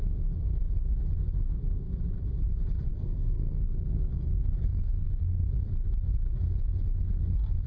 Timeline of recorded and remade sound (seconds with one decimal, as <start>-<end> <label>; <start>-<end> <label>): 0.0-2.9 recorded; 2.9-5.2 remade; 5.2-7.7 recorded